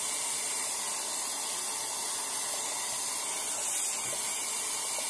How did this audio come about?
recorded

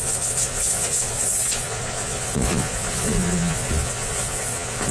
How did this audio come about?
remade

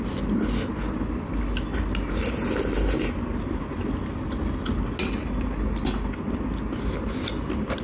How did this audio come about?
recorded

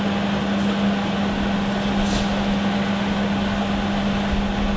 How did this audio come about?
recorded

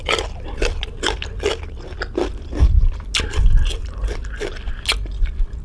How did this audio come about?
recorded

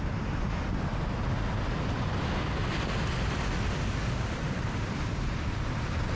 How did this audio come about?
recorded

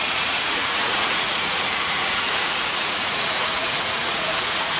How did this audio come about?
remade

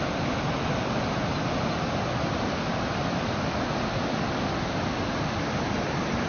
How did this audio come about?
recorded